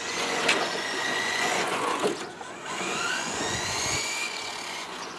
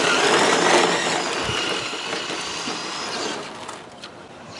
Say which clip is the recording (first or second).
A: second